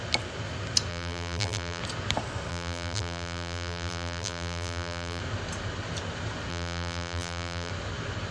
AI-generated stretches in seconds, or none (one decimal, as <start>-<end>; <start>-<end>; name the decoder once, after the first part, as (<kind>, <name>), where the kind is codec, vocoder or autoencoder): 0.9-1.8 (vocoder, BigVGAN v2); 2.5-5.2; 6.5-7.7